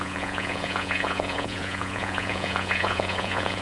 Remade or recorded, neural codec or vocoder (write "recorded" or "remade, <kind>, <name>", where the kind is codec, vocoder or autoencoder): remade, vocoder, Vocos